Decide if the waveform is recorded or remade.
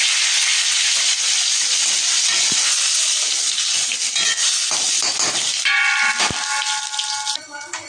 recorded